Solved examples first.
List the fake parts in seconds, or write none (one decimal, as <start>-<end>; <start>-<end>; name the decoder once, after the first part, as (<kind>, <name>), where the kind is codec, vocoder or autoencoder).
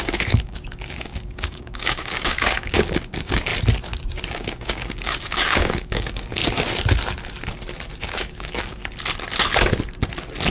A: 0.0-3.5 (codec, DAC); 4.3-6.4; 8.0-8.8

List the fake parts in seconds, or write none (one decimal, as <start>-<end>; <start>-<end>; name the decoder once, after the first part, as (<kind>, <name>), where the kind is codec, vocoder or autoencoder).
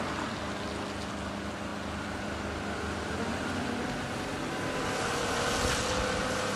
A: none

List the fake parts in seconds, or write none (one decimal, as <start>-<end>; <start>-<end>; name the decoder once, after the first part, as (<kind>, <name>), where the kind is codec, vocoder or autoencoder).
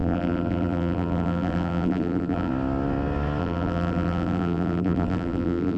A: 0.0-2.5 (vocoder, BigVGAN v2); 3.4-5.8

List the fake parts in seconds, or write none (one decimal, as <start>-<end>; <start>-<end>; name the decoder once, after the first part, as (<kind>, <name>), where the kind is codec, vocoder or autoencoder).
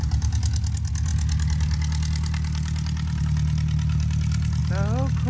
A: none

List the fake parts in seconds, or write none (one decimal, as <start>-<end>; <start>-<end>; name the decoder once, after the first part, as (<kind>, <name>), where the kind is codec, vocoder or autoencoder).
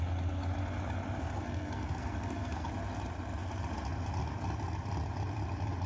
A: 1.2-2.7 (codec, SNAC)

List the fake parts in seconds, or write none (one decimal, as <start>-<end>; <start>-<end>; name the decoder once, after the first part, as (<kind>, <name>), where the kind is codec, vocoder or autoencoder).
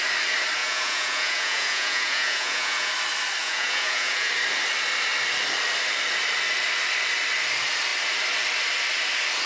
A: 0.6-2.9 (vocoder, Vocos); 3.4-4.3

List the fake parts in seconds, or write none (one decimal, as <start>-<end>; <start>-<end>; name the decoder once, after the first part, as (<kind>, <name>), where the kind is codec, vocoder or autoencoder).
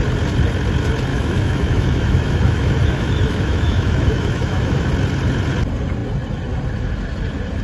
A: 1.1-4.9 (autoencoder, DAC-VAE)